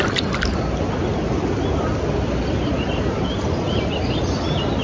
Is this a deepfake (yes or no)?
no